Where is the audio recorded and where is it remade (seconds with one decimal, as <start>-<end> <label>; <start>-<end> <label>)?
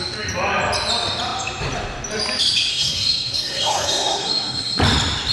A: 0.0-2.7 recorded; 2.7-4.8 remade; 4.8-5.3 recorded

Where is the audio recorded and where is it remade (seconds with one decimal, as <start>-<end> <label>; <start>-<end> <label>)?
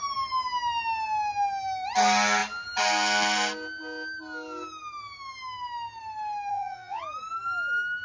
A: 0.0-6.5 recorded; 6.5-7.0 remade; 7.0-8.0 recorded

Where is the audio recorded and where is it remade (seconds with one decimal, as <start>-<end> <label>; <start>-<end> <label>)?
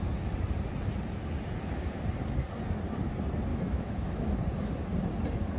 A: 0.0-3.5 recorded; 3.5-4.3 remade; 4.3-5.6 recorded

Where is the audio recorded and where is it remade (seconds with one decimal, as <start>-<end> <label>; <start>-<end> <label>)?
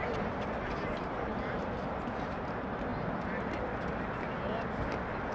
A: 0.0-1.3 recorded; 1.3-1.9 remade; 1.9-5.3 recorded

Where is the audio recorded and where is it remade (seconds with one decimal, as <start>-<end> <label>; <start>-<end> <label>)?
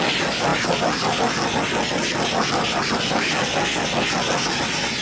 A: 0.0-5.0 recorded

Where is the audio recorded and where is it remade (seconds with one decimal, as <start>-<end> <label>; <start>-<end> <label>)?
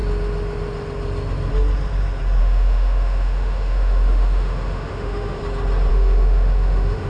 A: 0.0-2.4 recorded; 2.4-5.4 remade; 5.4-5.9 recorded; 5.9-7.1 remade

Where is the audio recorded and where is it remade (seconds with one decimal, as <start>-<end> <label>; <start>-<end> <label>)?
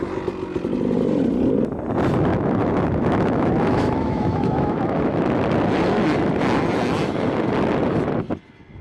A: 0.0-2.3 recorded; 2.3-5.2 remade; 5.2-8.8 recorded